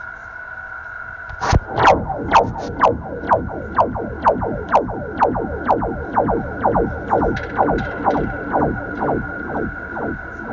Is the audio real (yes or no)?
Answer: yes